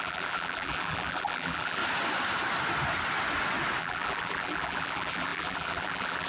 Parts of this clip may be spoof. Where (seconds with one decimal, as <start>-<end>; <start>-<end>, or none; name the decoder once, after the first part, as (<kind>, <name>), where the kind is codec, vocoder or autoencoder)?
0.0-1.8 (vocoder, BigVGAN v2); 3.8-6.3